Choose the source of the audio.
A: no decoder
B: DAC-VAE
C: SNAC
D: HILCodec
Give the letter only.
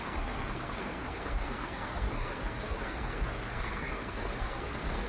C